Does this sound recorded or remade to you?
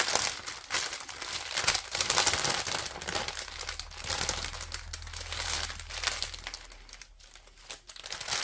recorded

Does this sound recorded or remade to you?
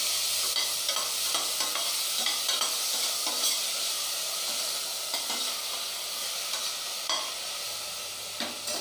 recorded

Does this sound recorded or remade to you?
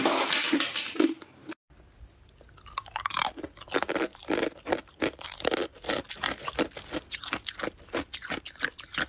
recorded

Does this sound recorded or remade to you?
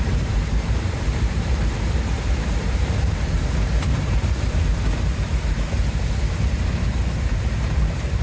remade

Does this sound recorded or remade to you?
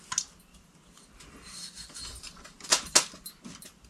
recorded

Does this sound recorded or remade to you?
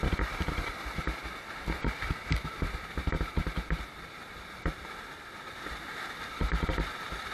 recorded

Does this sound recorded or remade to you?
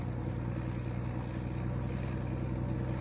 remade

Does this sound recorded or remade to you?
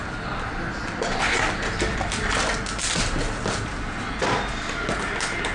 recorded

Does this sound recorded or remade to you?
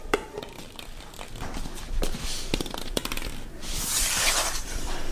remade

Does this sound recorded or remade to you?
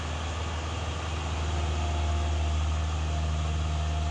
recorded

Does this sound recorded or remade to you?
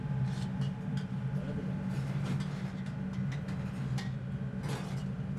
recorded